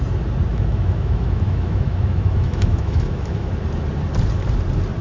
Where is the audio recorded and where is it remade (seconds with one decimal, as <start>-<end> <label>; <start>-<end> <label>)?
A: 0.0-0.5 recorded; 0.5-3.5 remade; 3.5-5.0 recorded